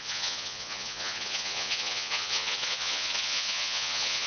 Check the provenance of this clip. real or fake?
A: fake